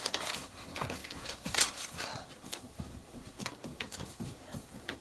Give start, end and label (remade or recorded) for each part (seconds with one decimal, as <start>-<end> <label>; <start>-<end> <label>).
0.0-5.0 remade